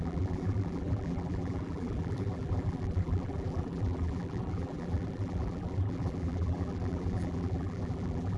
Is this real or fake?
fake